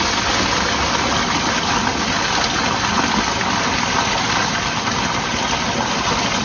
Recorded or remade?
recorded